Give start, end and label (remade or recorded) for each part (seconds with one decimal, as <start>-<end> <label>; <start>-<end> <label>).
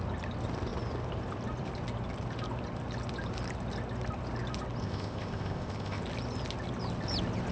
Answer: 0.0-4.8 recorded; 4.8-6.0 remade; 6.0-7.5 recorded